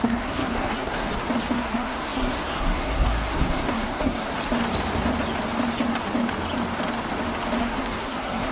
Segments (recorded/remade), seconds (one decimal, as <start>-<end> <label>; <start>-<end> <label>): 0.0-1.1 remade; 1.1-1.6 recorded; 1.6-4.3 remade; 4.3-7.6 recorded; 7.6-8.5 remade